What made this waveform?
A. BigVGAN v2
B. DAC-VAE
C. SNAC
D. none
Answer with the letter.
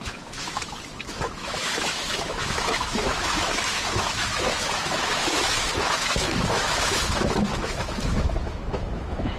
B